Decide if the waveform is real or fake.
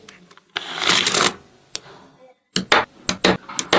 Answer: real